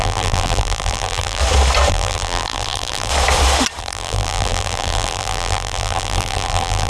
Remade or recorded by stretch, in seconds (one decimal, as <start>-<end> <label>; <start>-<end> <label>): 0.0-1.4 remade; 1.4-1.9 recorded; 1.9-3.1 remade; 3.1-3.8 recorded; 3.8-6.9 remade